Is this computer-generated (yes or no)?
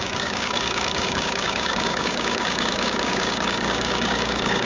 yes